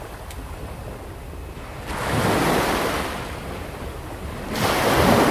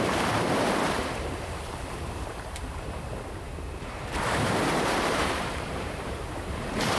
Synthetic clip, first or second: second